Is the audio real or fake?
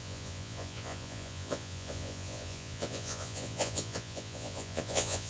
fake